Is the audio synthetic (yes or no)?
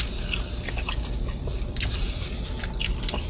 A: no